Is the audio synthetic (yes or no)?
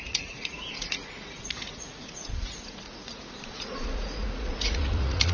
yes